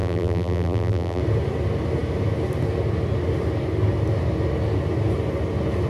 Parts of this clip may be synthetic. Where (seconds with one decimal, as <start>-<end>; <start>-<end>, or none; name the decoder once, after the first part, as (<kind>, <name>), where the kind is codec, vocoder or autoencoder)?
0.0-1.2 (vocoder, BigVGAN v2)